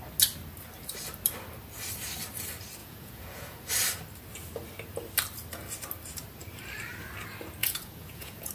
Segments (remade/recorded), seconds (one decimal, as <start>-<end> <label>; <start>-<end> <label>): 0.0-2.8 recorded; 2.8-3.7 remade; 3.7-7.6 recorded; 7.6-8.5 remade